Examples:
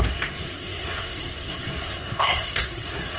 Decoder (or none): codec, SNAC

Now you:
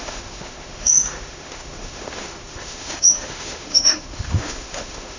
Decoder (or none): autoencoder, DAC-VAE